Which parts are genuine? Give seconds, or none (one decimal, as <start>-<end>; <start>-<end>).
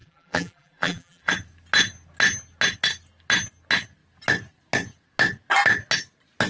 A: 1.3-6.5